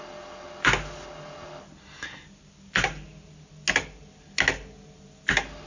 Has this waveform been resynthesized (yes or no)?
no